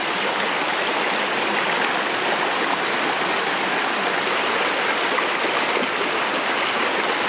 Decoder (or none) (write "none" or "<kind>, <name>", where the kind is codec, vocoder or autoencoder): none